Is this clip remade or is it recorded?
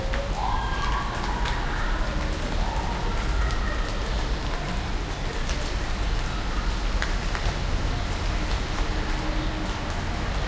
recorded